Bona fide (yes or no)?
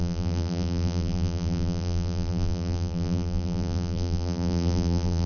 no